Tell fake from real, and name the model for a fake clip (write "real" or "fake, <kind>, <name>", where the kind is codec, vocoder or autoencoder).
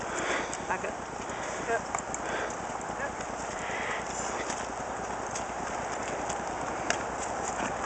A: real